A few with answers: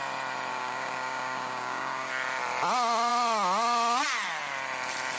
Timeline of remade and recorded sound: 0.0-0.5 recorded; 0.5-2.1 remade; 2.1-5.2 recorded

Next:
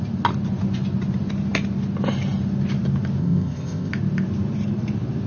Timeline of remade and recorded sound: 0.0-3.2 recorded; 3.2-3.9 remade; 3.9-5.3 recorded

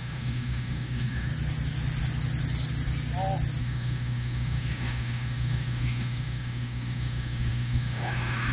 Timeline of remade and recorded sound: 0.0-1.3 remade; 1.3-3.6 recorded; 3.6-8.5 remade

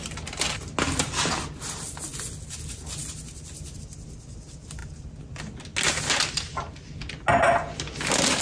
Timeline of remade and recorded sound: 0.0-8.4 recorded